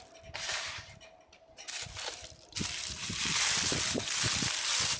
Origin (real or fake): real